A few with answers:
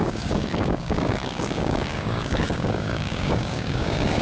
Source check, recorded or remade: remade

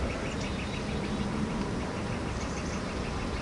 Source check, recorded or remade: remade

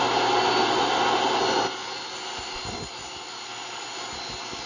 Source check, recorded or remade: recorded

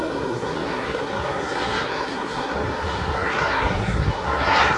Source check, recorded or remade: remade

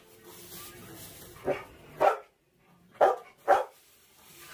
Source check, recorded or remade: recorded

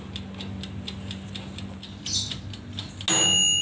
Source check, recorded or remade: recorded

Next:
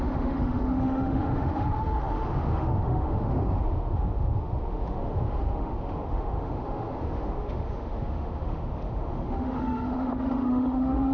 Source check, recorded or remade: remade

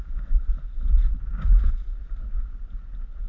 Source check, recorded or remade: recorded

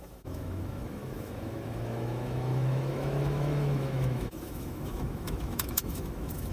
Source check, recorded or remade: remade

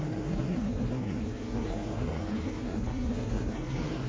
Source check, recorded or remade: remade